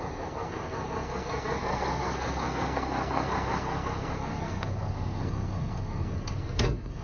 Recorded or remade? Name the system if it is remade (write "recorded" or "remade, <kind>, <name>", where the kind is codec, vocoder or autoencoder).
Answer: remade, codec, SNAC